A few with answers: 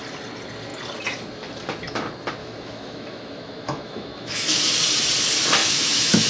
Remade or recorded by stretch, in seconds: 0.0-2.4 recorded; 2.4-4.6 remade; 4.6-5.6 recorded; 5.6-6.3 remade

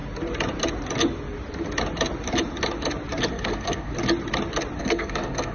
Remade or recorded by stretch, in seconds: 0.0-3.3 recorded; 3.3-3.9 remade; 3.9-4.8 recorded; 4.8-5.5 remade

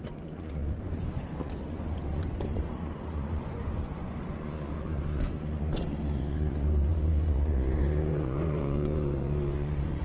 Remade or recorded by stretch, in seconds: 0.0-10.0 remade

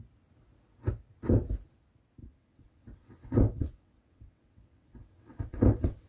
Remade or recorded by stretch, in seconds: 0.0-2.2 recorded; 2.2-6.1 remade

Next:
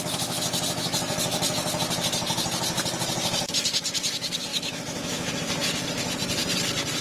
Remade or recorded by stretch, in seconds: 0.0-4.5 recorded; 4.5-5.3 remade; 5.3-7.0 recorded